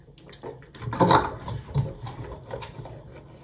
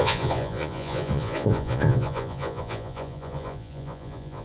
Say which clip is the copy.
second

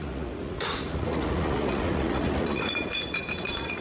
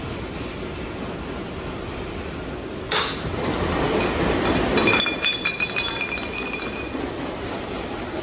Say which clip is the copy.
first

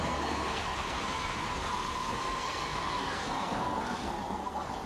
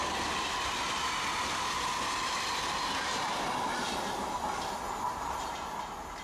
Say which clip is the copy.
first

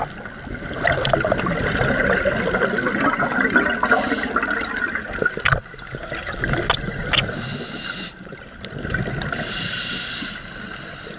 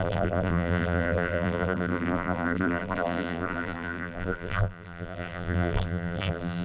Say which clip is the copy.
second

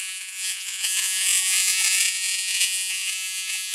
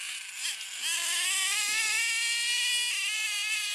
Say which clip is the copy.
first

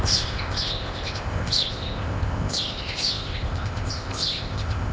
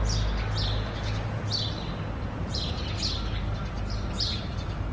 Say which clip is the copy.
first